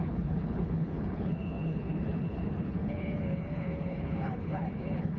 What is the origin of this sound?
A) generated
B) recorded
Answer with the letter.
A